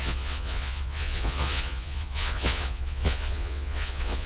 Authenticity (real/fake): fake